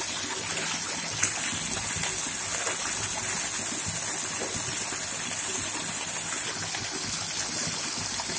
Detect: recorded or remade recorded